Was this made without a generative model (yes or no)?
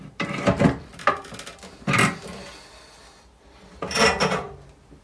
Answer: yes